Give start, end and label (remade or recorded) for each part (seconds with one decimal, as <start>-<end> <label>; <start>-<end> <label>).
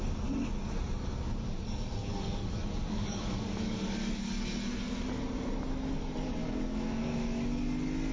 0.0-2.4 recorded; 2.4-4.4 remade; 4.4-6.4 recorded; 6.4-7.6 remade; 7.6-8.1 recorded